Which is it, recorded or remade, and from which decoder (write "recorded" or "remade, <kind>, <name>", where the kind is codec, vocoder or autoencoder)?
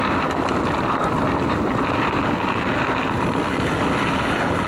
recorded